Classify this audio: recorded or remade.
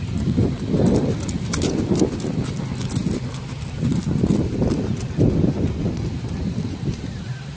recorded